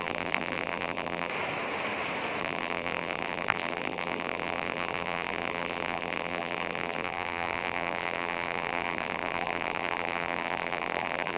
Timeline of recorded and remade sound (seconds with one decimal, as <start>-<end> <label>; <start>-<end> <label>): 0.0-1.3 remade; 1.3-2.4 recorded; 2.4-11.4 remade